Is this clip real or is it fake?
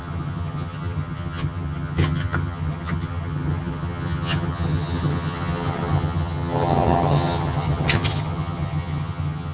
fake